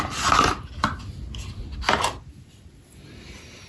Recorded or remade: recorded